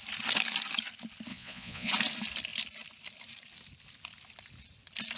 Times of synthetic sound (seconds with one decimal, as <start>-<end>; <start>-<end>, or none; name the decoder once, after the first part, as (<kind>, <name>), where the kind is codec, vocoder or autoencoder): 1.3-1.9 (vocoder, Vocos)